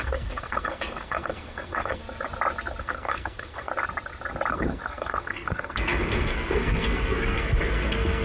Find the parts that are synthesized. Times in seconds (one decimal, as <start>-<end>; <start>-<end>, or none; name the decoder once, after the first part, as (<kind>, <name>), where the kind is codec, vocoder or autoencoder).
0.0-2.0 (codec, SNAC); 2.8-3.7; 4.5-8.2